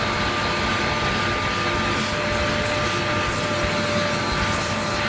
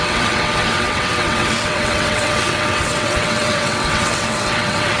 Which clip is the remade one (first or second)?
second